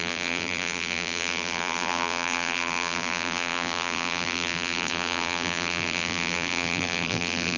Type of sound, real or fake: fake